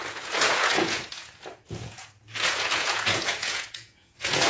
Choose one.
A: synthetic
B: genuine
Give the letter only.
A